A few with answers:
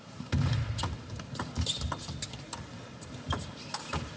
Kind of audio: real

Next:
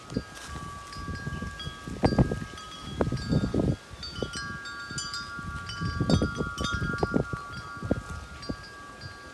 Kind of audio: real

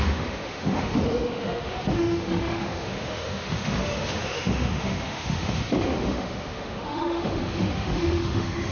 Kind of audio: fake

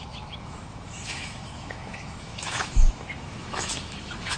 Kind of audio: fake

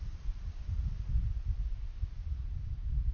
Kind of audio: real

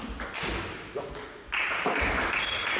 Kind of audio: real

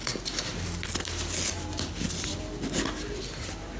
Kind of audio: real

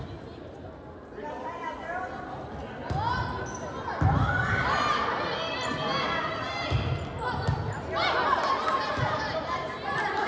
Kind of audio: real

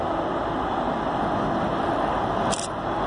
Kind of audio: real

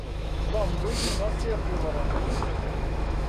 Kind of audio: fake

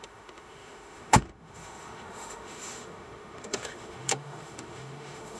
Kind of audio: fake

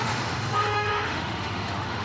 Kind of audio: fake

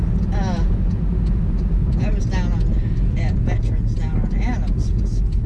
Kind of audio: real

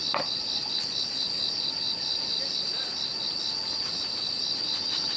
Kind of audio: real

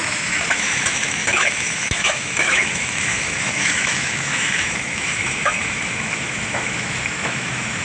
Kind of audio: fake